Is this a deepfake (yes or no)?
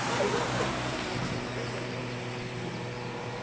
no